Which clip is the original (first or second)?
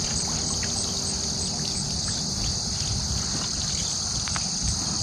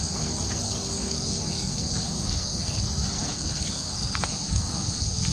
first